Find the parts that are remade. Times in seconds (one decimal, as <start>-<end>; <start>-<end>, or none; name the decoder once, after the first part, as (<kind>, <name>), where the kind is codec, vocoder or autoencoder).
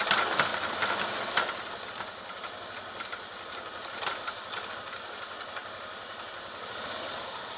none